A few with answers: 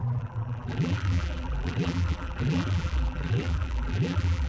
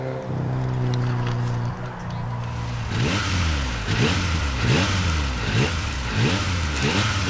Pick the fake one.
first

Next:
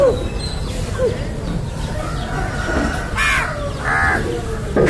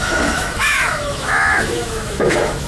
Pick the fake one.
second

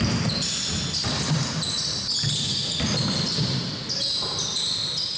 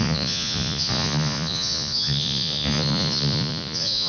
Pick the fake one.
second